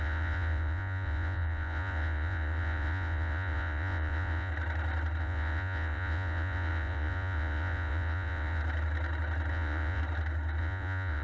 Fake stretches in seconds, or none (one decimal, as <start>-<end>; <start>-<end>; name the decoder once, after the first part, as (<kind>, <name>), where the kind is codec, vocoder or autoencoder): 0.0-4.5 (vocoder, Vocos); 5.2-8.6; 9.5-10.0; 10.6-11.2